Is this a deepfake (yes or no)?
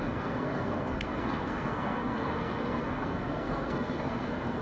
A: yes